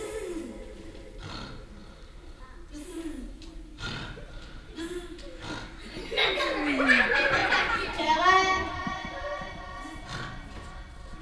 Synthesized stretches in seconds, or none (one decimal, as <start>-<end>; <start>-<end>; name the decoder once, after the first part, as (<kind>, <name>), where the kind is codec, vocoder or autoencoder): 1.8-4.8 (vocoder, BigVGAN v2); 7.4-8.2; 8.6-9.5